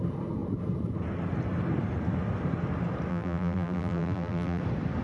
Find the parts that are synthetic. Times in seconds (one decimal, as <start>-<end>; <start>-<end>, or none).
3.1-4.6